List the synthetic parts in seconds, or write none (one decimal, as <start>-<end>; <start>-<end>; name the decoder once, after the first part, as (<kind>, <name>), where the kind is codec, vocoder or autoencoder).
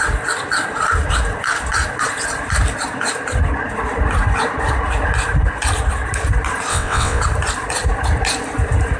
6.7-7.2 (vocoder, WaveNeXt)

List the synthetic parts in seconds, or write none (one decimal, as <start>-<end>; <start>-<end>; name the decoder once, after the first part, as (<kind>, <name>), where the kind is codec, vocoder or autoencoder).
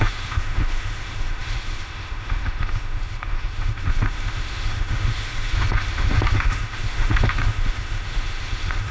0.0-8.9 (autoencoder, DAC-VAE)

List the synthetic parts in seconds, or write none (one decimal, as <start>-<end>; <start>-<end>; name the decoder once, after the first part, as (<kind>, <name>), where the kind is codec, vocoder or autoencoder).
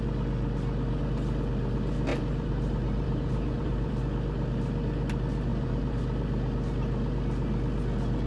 2.1-4.0 (vocoder, BigVGAN v2); 5.5-6.0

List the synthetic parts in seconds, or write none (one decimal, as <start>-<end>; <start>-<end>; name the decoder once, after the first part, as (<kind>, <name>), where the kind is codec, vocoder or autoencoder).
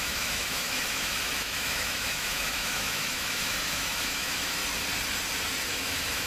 0.0-4.6 (autoencoder, DAC-VAE); 5.7-6.3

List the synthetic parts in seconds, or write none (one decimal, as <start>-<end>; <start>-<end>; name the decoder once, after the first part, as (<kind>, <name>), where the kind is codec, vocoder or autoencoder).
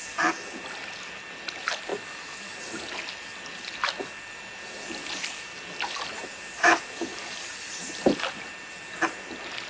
0.0-5.0 (vocoder, BigVGAN v2); 6.1-9.7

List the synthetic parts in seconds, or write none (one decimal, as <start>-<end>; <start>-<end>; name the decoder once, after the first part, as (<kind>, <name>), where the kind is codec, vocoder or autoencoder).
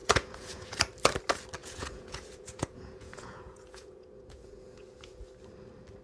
0.0-0.7 (vocoder, Vocos); 1.6-5.2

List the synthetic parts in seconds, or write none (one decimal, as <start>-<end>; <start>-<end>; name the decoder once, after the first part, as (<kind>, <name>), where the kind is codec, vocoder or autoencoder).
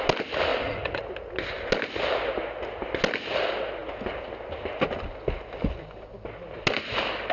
0.5-1.0 (vocoder, Vocos)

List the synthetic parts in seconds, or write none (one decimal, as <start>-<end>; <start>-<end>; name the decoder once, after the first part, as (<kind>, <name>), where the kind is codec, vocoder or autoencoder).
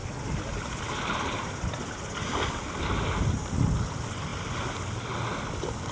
none